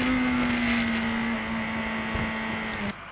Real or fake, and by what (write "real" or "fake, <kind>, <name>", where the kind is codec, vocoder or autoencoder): real